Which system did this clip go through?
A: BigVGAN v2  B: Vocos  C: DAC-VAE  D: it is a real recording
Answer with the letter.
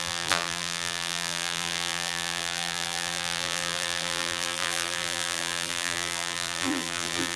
A